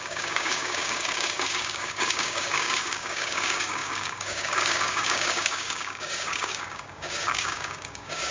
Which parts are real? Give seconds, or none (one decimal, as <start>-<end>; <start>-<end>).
none